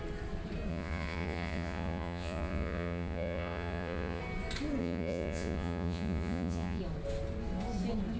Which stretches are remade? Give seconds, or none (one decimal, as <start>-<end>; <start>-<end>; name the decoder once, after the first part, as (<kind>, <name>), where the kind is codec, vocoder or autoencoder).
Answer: 0.7-4.2 (vocoder, Vocos); 4.8-6.8